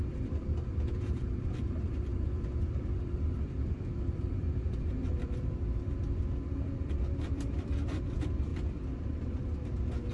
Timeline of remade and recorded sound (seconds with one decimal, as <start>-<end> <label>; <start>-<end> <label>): 0.0-8.5 remade; 8.5-9.0 recorded; 9.0-10.1 remade